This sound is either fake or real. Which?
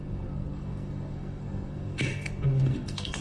fake